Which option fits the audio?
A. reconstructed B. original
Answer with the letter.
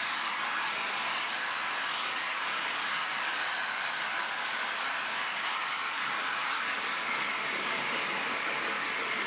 A